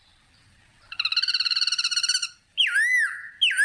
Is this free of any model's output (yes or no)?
yes